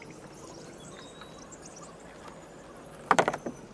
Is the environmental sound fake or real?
real